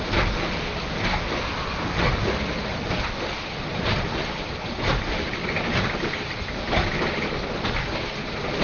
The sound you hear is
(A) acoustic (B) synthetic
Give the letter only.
A